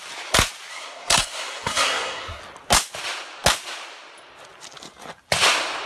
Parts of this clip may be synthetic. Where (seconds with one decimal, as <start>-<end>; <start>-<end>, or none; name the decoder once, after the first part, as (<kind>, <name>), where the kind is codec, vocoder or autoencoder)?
0.7-2.4 (codec, SNAC)